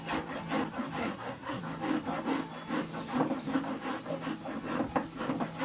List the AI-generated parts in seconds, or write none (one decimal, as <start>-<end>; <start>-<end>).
1.0-1.6